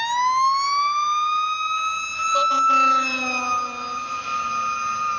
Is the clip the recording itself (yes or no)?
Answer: yes